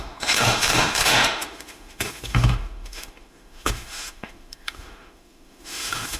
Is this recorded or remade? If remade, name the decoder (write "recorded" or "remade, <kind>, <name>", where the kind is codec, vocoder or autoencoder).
remade, autoencoder, DAC-VAE